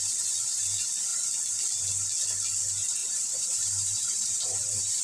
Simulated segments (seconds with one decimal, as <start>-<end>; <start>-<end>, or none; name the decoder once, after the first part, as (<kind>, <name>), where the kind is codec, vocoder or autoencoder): 3.0-5.0 (vocoder, BigVGAN v2)